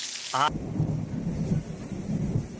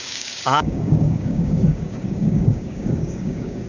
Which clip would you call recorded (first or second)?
first